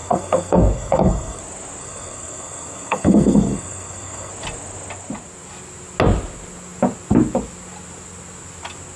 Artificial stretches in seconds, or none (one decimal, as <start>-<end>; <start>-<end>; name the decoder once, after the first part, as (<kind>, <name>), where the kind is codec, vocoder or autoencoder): 0.0-1.4 (codec, SNAC); 1.8-4.3